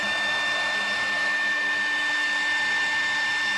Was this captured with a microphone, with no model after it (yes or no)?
yes